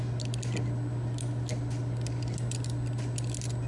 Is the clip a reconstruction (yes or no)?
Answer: no